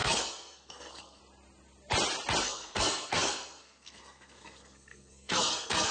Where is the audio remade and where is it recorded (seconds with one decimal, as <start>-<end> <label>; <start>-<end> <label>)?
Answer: 0.0-1.2 remade; 1.2-2.4 recorded; 2.4-5.9 remade